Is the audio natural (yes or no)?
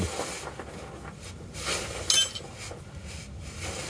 yes